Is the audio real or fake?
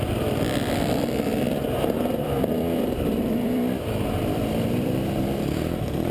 fake